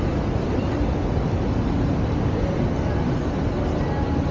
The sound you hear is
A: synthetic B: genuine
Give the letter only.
B